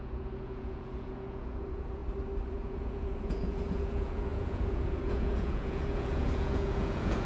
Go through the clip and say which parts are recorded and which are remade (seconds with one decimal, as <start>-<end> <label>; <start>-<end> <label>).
0.0-2.0 remade; 2.0-2.5 recorded; 2.5-7.2 remade